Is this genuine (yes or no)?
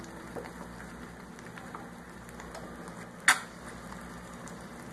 yes